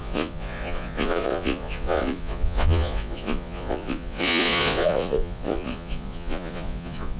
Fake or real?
fake